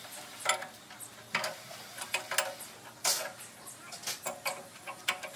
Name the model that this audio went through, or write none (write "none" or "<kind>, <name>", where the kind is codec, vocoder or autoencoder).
none